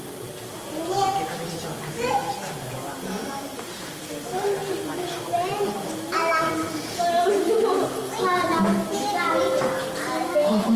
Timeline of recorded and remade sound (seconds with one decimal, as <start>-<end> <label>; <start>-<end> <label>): 0.0-10.8 recorded